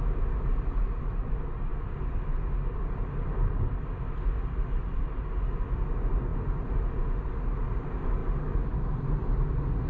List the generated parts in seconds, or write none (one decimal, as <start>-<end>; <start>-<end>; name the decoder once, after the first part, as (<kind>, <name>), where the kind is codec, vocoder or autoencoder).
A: none